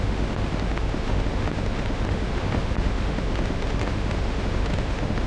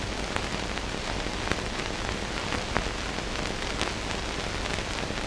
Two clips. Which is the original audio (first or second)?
second